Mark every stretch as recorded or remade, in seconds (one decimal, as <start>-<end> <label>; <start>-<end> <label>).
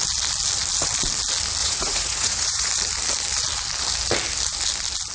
0.0-1.6 recorded; 1.6-2.7 remade; 2.7-5.1 recorded